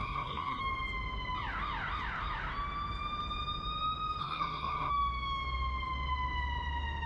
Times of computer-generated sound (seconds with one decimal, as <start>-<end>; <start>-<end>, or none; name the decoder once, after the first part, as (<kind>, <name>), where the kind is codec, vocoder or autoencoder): 0.0-0.6 (codec, SNAC); 4.2-4.9

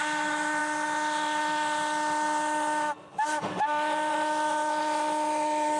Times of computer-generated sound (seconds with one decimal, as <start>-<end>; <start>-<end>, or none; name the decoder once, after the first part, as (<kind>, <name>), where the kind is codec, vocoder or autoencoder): none

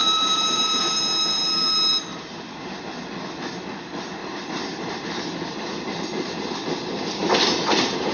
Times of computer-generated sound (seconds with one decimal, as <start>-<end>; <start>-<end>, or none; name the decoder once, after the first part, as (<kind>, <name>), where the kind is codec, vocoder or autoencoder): 0.0-1.0 (vocoder, BigVGAN v2); 2.1-2.7; 4.2-6.4; 7.2-8.1

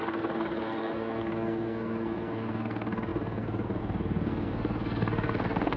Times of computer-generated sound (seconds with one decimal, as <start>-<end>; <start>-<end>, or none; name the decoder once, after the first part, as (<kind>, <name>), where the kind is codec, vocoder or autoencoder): 0.0-5.8 (codec, SNAC)

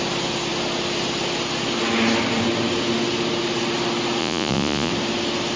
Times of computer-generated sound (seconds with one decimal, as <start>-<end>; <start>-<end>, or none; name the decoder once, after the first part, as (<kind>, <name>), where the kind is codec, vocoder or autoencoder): 4.2-4.9 (vocoder, Vocos)